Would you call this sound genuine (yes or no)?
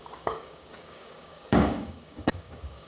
no